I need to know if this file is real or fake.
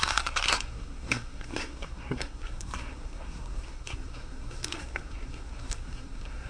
fake